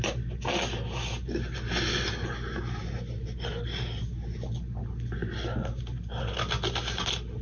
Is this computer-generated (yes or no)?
no